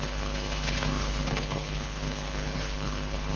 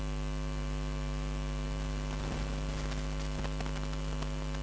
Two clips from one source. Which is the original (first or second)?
second